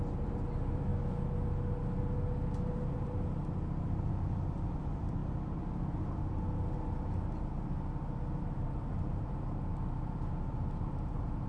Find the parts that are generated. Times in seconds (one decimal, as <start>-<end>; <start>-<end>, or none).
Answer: 0.0-0.9; 4.1-5.2; 8.4-11.5